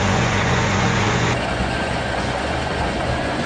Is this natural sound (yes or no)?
no